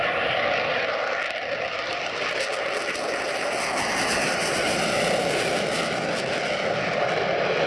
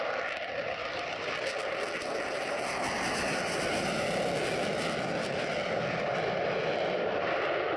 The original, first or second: second